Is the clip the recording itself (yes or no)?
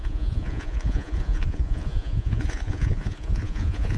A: no